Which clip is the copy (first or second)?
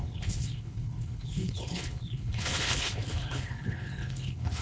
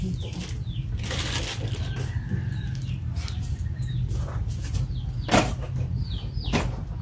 first